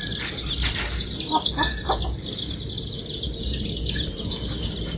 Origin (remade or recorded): recorded